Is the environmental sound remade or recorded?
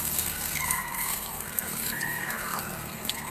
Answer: remade